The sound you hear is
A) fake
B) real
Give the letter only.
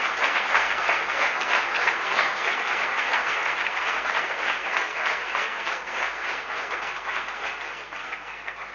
A